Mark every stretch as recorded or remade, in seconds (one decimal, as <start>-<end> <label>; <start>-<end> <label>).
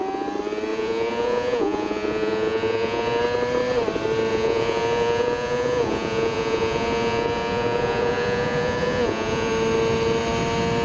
0.0-0.7 recorded; 0.7-3.2 remade; 3.2-4.3 recorded; 4.3-9.5 remade; 9.5-10.8 recorded